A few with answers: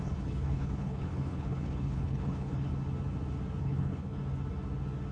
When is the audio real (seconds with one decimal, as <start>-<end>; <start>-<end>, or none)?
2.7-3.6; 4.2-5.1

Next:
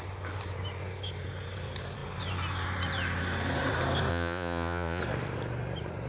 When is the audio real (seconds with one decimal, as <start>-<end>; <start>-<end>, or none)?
0.0-4.1; 5.0-6.1

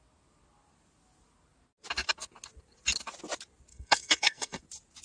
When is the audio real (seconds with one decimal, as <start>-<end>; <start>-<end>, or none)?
0.0-3.7; 4.6-5.0

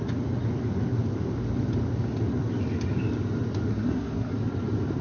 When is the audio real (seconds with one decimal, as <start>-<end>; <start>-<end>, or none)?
0.0-3.7; 4.3-5.0